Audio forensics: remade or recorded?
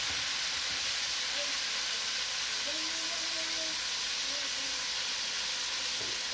recorded